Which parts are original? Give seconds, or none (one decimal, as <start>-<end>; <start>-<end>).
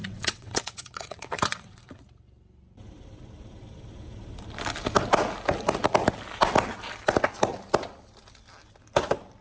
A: 2.0-9.4